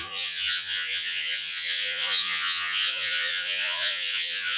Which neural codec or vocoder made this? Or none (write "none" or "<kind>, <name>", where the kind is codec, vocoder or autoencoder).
vocoder, Vocos